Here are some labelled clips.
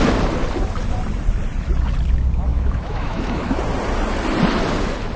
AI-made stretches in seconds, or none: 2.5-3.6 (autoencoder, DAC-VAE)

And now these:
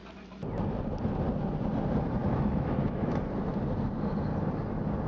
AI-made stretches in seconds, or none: 2.2-3.2 (autoencoder, DAC-VAE)

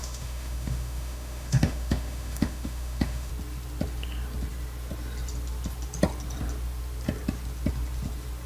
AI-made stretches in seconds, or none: 0.0-3.3 (autoencoder, DAC-VAE)